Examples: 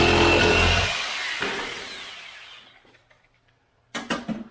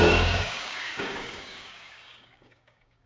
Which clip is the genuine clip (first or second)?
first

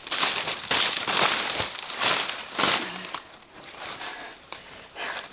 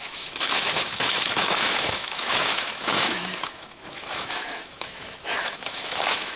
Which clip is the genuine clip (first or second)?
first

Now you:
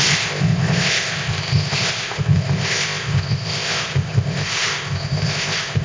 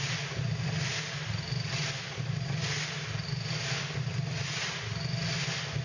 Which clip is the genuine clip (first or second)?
second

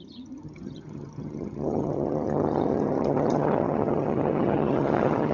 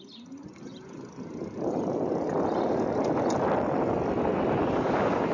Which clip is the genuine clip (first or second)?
second